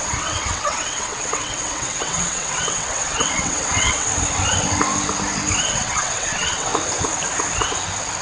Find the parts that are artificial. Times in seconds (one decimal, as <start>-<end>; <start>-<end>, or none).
0.0-4.1; 5.6-6.7